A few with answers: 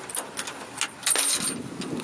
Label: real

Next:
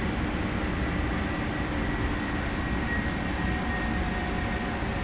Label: real